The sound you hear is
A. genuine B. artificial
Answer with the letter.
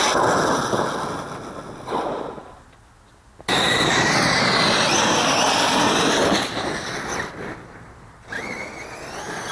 A